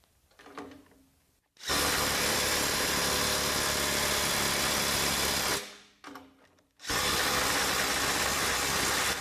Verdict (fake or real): real